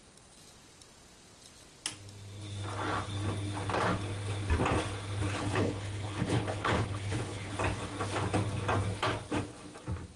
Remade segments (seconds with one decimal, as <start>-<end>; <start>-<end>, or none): 5.4-7.5